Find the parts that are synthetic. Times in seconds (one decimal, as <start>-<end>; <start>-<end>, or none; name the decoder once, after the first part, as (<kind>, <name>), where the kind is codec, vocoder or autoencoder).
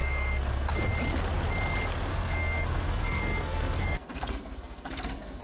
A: 0.0-0.7 (codec, SNAC); 2.1-5.4